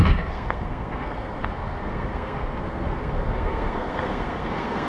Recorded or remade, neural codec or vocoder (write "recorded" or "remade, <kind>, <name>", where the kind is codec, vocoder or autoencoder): remade, codec, SNAC